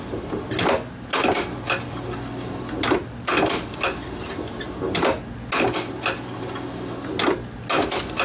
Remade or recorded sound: recorded